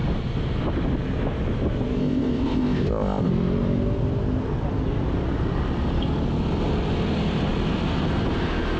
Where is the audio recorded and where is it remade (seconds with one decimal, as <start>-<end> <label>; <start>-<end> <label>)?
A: 0.0-2.0 recorded; 2.0-3.3 remade; 3.3-8.8 recorded